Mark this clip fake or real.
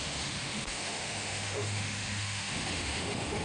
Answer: fake